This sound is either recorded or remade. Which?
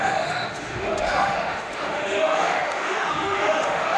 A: remade